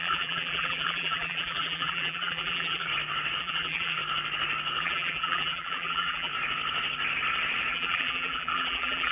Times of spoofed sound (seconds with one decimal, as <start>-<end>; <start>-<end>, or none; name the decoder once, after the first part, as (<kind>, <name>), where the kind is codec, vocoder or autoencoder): 0.0-2.9 (vocoder, BigVGAN v2); 3.4-4.0; 4.8-6.3; 7.7-9.1